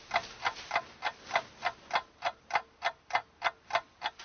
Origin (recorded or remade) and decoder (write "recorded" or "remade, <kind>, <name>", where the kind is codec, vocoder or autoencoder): recorded